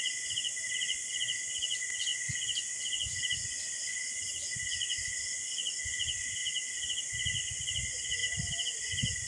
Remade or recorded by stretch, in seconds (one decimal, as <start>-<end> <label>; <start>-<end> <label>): 0.0-6.4 remade; 6.4-7.0 recorded; 7.0-8.2 remade; 8.2-8.8 recorded; 8.8-9.3 remade